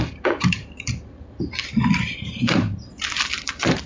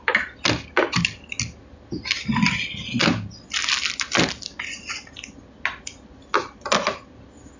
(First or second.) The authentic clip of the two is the second